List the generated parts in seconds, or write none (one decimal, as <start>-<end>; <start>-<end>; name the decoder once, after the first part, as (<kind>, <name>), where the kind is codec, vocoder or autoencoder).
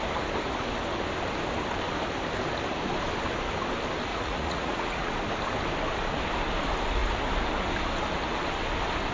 4.1-5.1 (vocoder, Vocos)